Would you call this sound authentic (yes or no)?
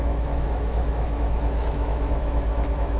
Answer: no